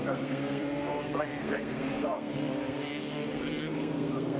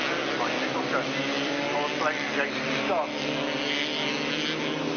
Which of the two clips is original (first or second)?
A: second